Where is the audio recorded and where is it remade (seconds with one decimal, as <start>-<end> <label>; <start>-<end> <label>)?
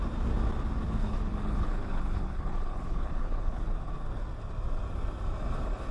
0.0-1.0 recorded; 1.0-3.7 remade; 3.7-5.9 recorded